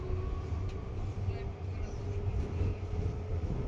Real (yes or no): yes